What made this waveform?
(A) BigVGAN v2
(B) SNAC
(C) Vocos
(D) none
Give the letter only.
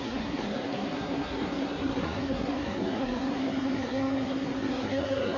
B